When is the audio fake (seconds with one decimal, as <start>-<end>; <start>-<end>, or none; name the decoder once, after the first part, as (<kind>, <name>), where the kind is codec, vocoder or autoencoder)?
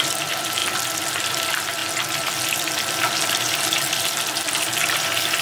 0.0-0.6 (vocoder, BigVGAN v2); 1.2-1.8; 3.9-5.4